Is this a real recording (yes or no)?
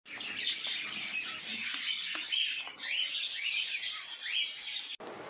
yes